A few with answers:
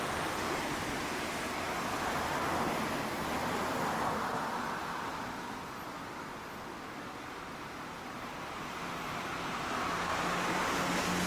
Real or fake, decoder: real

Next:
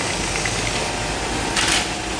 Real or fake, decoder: real